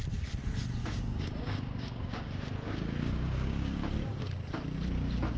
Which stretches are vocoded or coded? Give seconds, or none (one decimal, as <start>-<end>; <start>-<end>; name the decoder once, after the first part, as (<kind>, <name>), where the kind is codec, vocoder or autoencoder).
0.8-3.9 (codec, DAC)